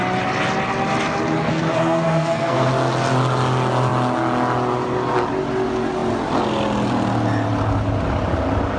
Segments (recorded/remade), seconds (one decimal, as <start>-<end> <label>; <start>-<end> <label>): 0.0-1.5 recorded; 1.5-2.7 remade; 2.7-8.8 recorded